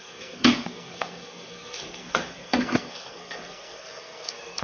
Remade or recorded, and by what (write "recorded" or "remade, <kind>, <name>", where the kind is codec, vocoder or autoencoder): remade, codec, SNAC